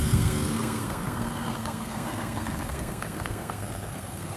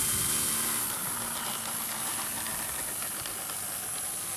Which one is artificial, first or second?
first